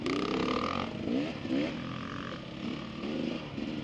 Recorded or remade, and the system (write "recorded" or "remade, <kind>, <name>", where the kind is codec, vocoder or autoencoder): recorded